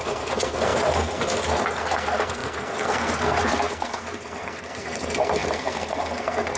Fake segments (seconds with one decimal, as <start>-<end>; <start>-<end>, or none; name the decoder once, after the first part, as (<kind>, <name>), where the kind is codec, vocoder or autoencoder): 0.0-6.6 (codec, SNAC)